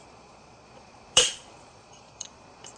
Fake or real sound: fake